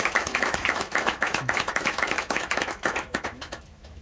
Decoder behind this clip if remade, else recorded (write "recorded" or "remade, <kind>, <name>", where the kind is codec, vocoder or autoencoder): remade, autoencoder, DAC-VAE